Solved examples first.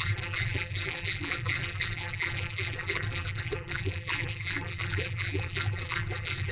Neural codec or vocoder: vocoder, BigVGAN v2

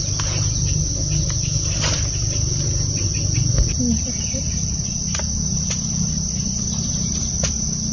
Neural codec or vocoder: none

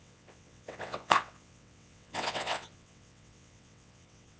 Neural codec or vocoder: vocoder, WaveNeXt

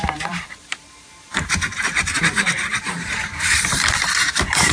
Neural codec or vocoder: vocoder, BigVGAN v2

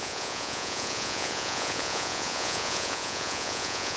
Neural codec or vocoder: vocoder, Vocos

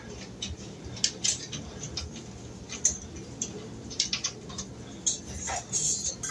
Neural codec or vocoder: none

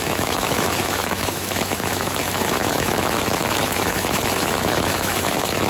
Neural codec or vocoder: autoencoder, DAC-VAE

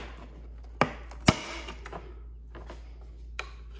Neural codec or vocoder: none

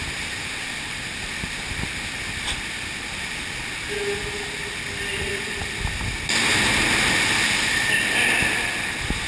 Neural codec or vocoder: none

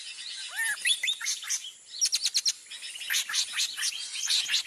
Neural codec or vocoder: none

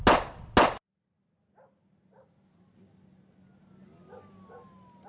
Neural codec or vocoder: none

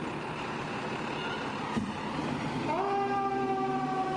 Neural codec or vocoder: none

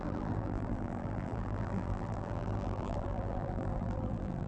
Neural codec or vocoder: vocoder, BigVGAN v2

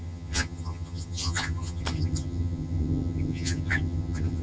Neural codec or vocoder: vocoder, HiFi-GAN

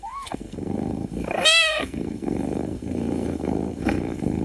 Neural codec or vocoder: codec, SNAC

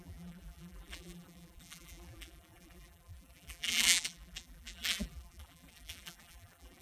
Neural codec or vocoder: vocoder, BigVGAN v2